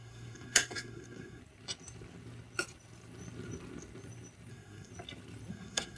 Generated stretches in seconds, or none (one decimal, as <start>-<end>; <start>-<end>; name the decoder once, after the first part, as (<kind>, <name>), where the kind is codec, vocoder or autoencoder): 0.0-1.4 (codec, SNAC); 4.5-4.9; 5.5-6.0